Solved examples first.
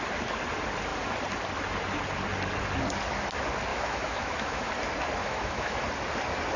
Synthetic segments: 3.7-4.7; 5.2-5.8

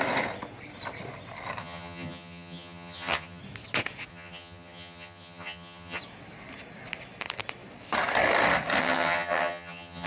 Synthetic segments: 1.6-3.4; 4.1-6.0; 8.8-10.1

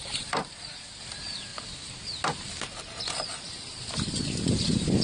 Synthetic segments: 0.0-0.4; 1.0-1.5; 4.5-5.0

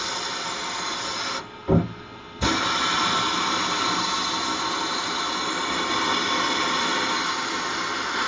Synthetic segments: none